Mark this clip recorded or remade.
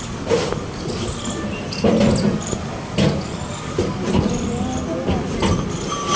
recorded